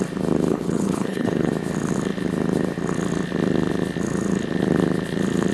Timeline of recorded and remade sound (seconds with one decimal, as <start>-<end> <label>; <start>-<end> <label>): 0.0-0.5 recorded; 0.5-1.5 remade; 1.5-5.5 recorded